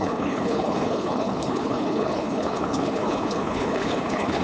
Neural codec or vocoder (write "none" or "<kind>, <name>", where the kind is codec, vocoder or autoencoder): codec, HILCodec